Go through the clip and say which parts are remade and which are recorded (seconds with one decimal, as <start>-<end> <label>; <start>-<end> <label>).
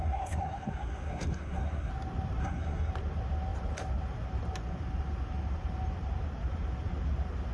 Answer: 0.0-1.9 remade; 1.9-2.4 recorded; 2.4-2.9 remade; 2.9-7.5 recorded